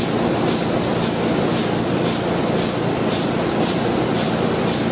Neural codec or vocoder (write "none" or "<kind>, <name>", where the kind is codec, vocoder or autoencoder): none